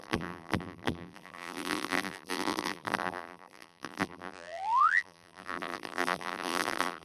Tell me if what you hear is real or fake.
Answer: fake